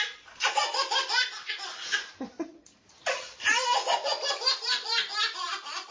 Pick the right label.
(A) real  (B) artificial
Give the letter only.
B